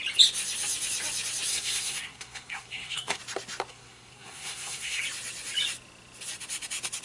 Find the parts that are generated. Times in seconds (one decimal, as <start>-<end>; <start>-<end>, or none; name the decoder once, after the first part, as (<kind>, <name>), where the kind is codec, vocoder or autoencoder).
1.5-3.2 (codec, SNAC); 3.7-5.0